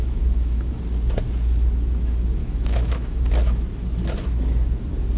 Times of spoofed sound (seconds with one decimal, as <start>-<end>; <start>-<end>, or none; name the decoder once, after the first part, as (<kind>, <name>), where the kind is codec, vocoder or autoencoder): 0.0-0.8 (autoencoder, DAC-VAE); 2.4-3.3